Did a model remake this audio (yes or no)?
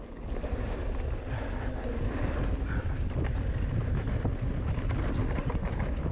no